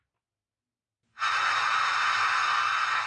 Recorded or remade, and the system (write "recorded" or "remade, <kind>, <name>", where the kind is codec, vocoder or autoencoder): recorded